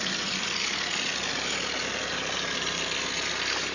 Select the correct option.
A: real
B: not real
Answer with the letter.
A